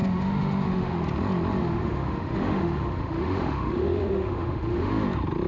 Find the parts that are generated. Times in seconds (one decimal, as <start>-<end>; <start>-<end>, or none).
0.0-1.0; 1.6-4.9